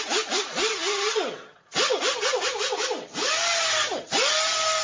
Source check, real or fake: real